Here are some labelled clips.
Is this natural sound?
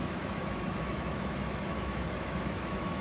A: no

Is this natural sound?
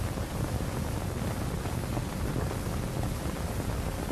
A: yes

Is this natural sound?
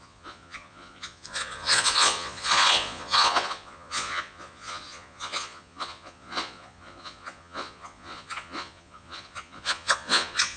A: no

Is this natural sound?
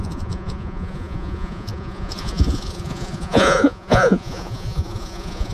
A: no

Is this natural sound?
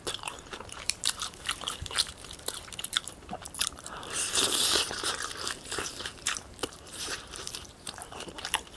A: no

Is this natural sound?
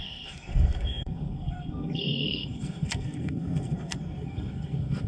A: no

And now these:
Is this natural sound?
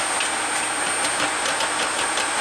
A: yes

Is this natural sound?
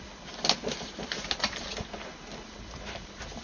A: yes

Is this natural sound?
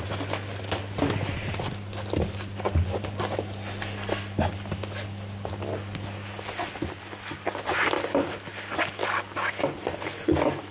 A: yes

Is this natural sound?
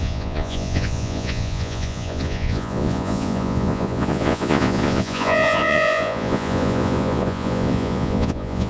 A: no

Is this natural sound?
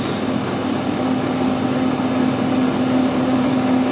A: yes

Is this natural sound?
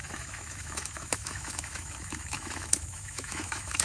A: no